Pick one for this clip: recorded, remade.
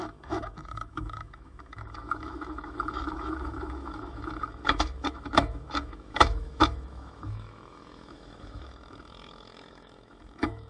remade